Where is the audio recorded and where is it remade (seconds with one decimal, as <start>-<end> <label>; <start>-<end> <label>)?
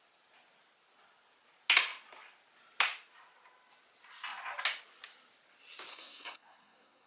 0.0-5.9 recorded; 5.9-7.1 remade